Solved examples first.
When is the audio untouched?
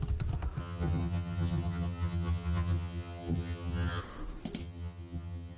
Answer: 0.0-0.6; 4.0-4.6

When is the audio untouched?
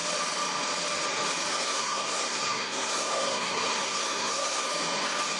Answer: 0.0-1.5; 4.7-5.4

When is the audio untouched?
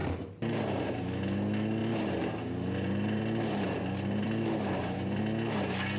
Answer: 1.0-1.8; 5.2-6.0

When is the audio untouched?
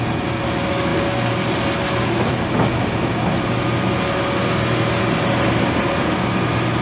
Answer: 0.0-6.8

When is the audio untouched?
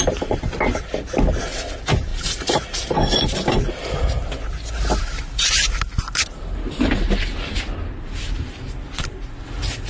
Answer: 0.0-9.9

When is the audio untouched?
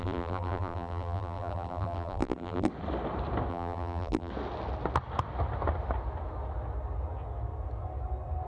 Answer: 2.7-3.5; 4.3-8.5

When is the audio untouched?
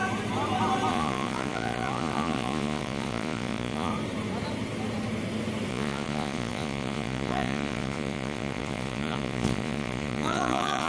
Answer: 0.0-0.9; 3.9-5.7